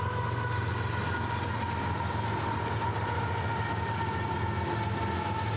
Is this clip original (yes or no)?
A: yes